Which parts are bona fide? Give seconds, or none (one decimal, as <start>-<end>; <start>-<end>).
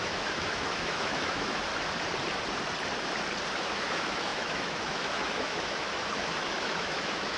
1.7-3.5